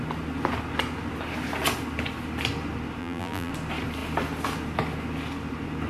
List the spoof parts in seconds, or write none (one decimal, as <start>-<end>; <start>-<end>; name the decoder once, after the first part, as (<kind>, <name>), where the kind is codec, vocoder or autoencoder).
3.0-3.5 (vocoder, BigVGAN v2)